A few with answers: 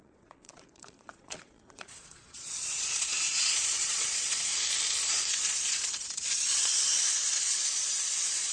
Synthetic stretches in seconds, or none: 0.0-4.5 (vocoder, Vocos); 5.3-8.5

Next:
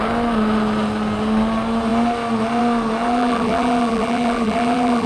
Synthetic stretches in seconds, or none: 3.0-5.1 (vocoder, BigVGAN v2)

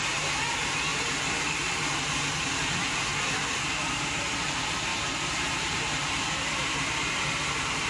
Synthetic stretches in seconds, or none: 0.0-3.1 (vocoder, BigVGAN v2); 3.7-7.9